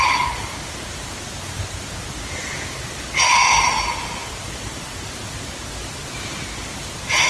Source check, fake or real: real